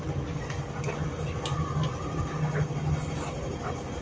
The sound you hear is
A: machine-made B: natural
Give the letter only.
B